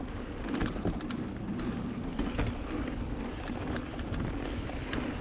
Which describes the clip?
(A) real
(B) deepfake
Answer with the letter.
A